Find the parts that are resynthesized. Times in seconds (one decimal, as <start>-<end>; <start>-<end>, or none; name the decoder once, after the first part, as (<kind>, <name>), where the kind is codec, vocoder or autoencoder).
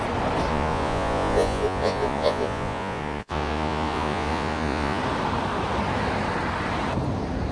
0.5-5.0 (vocoder, Vocos)